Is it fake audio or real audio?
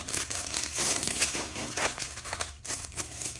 fake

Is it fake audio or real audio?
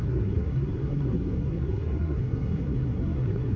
fake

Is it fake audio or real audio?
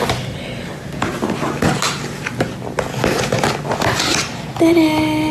real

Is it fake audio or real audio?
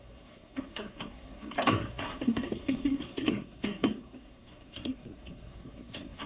fake